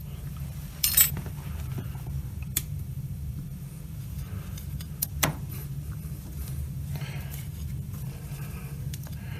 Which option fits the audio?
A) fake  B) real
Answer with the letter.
A